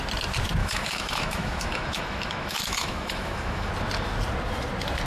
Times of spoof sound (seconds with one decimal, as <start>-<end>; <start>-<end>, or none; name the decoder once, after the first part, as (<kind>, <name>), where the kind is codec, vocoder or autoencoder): 0.6-3.7 (autoencoder, DAC-VAE)